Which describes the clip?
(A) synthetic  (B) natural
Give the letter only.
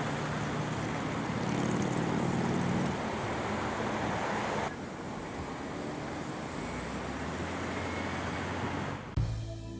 B